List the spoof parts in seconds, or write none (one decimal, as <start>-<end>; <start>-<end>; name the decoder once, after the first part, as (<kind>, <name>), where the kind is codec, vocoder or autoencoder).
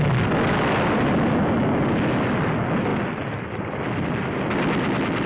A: none